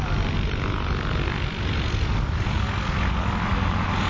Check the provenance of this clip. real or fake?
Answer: real